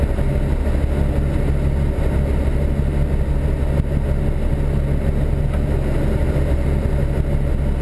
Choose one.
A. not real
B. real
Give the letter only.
B